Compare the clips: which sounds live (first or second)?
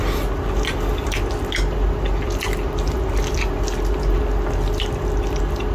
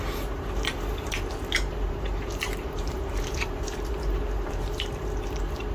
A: first